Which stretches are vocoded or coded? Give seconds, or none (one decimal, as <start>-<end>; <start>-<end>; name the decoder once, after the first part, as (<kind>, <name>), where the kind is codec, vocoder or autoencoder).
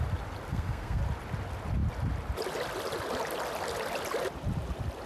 0.5-1.0 (codec, SNAC)